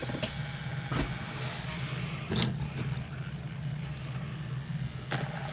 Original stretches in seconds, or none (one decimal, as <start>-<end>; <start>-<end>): 0.0-5.5